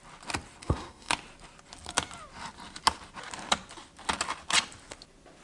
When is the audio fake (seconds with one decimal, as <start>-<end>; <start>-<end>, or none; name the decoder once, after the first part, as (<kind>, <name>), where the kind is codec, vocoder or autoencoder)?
0.6-1.1 (codec, SNAC)